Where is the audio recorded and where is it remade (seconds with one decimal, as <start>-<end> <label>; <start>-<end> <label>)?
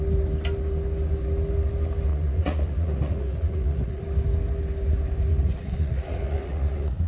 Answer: 0.0-2.1 recorded; 2.1-4.0 remade; 4.0-5.3 recorded; 5.3-7.1 remade